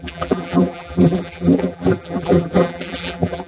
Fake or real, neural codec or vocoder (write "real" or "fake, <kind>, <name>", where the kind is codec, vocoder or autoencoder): fake, vocoder, BigVGAN v2